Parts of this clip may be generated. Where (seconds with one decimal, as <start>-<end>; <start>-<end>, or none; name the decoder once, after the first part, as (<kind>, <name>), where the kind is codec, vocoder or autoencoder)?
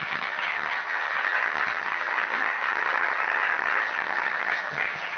0.0-5.2 (vocoder, HiFi-GAN)